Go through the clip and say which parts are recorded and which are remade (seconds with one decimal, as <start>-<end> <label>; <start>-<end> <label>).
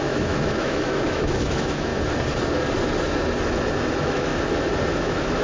0.0-1.9 remade; 1.9-3.9 recorded; 3.9-4.3 remade; 4.3-4.9 recorded; 4.9-5.4 remade